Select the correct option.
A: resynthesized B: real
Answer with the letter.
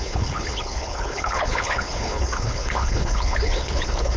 A